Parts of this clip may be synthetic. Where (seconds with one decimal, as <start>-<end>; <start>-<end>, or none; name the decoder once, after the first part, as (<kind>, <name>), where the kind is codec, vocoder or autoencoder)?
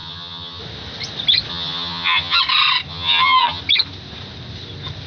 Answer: 0.0-0.6 (vocoder, HiFi-GAN); 1.5-2.4; 2.9-3.6